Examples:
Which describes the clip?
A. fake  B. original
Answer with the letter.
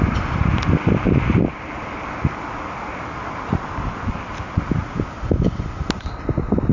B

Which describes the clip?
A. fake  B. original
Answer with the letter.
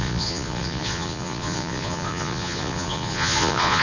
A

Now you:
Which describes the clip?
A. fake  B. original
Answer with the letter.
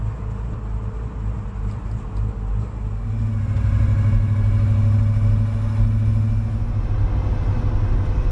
B